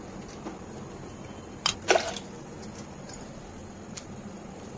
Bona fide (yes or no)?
yes